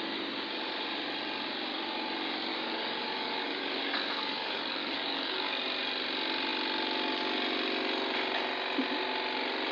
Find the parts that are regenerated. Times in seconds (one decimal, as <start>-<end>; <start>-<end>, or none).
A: 2.5-5.6